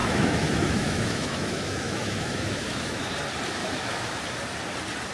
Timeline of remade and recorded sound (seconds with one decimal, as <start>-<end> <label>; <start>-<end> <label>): 0.0-3.1 remade; 3.1-3.6 recorded; 3.6-4.2 remade; 4.2-5.1 recorded